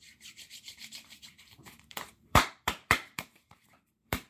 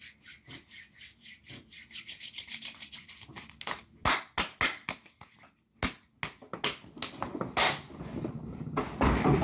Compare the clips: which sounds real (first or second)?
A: second